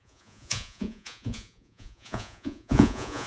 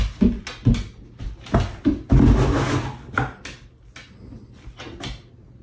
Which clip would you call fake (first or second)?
first